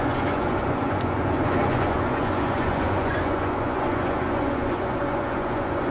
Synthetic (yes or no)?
yes